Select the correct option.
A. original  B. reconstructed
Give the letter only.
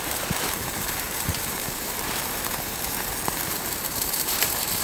B